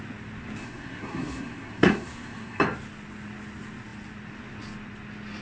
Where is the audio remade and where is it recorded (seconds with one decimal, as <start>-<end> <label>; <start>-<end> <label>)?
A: 0.0-0.6 recorded; 0.6-2.6 remade; 2.6-5.4 recorded